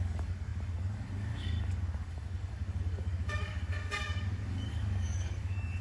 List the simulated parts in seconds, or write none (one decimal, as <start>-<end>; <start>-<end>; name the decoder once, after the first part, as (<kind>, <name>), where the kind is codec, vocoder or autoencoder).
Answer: 0.0-5.8 (codec, DAC)